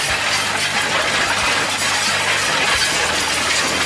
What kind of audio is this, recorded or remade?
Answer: recorded